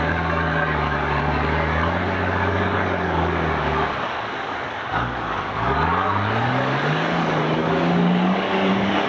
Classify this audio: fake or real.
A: fake